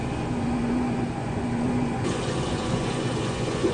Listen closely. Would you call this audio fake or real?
fake